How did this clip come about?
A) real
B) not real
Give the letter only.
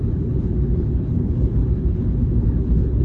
B